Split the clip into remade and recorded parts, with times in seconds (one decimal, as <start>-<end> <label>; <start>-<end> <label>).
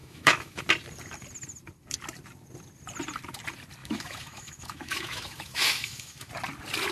0.0-0.6 remade; 0.6-3.8 recorded; 3.8-6.3 remade; 6.3-6.9 recorded